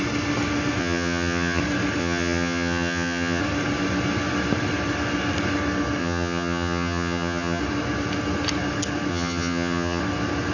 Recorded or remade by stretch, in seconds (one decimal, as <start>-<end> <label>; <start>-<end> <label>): 0.0-0.8 recorded; 0.8-1.6 remade; 1.6-2.0 recorded; 2.0-3.4 remade; 3.4-6.0 recorded; 6.0-7.6 remade; 7.6-9.1 recorded; 9.1-10.0 remade; 10.0-10.5 recorded